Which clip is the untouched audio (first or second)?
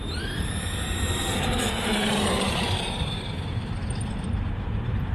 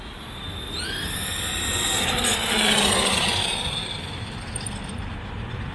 second